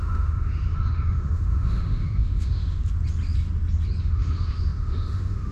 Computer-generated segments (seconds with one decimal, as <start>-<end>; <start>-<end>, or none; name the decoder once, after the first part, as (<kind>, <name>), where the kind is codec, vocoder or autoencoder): 0.0-2.8 (autoencoder, DAC-VAE); 4.0-5.5